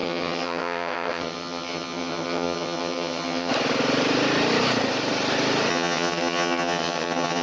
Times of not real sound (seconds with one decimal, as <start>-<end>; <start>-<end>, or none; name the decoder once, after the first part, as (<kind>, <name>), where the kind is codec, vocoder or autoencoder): 0.0-3.5 (vocoder, HiFi-GAN); 5.7-7.4